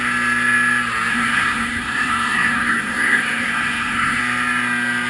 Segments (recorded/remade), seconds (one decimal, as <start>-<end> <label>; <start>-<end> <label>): 0.0-1.1 recorded; 1.1-4.2 remade; 4.2-5.1 recorded